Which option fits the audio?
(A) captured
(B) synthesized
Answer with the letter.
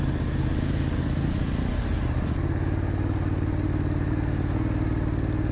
A